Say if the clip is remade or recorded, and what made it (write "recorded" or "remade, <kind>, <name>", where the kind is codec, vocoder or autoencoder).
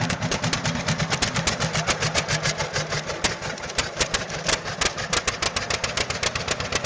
recorded